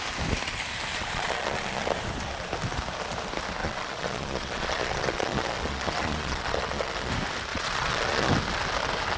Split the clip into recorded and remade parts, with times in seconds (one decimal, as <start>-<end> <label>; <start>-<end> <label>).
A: 0.0-0.9 recorded; 0.9-1.9 remade; 1.9-3.6 recorded; 3.6-7.1 remade; 7.1-7.5 recorded; 7.5-8.3 remade; 8.3-9.2 recorded